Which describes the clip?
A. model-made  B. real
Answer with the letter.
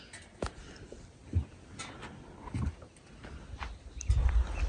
B